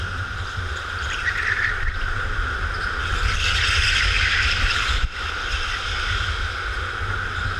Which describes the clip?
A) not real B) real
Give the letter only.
B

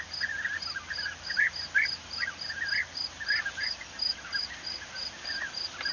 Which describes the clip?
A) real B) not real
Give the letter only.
A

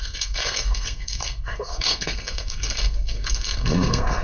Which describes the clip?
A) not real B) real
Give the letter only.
A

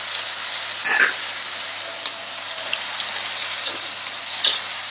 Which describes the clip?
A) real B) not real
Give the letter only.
A